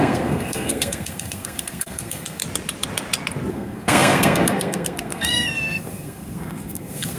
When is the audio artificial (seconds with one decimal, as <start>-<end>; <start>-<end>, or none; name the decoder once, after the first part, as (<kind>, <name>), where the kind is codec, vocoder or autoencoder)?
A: 0.0-2.4 (codec, SNAC); 3.5-7.2

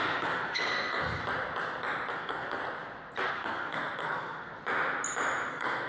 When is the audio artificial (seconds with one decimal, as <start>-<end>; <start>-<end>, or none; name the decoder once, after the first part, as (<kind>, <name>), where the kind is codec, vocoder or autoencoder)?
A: 0.0-1.2 (codec, SNAC); 2.1-2.6; 3.3-4.5; 5.5-5.9

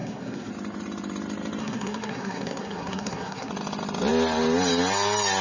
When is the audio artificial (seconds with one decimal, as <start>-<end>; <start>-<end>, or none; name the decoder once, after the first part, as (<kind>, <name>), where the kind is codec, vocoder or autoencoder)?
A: 0.0-0.5 (codec, SNAC); 1.6-3.5

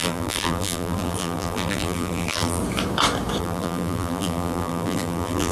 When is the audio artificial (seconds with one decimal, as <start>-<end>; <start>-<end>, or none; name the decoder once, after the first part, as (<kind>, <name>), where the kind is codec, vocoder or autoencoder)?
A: 0.0-2.6 (vocoder, BigVGAN v2); 3.4-5.5

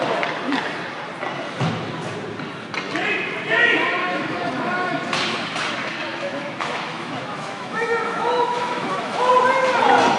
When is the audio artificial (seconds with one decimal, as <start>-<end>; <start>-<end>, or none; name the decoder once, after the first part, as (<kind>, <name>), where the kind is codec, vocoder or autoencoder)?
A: 4.0-4.6 (autoencoder, DAC-VAE); 6.1-9.3

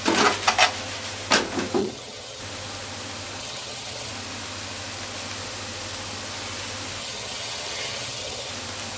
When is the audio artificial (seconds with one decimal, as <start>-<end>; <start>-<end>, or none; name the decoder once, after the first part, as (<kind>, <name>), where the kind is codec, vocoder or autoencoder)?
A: 1.8-2.4 (vocoder, HiFi-GAN); 3.4-4.1; 7.0-8.5

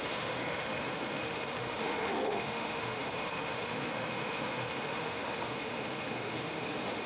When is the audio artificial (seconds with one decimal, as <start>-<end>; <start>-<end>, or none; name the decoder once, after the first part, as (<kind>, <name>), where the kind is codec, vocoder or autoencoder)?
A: 0.0-7.1 (autoencoder, DAC-VAE)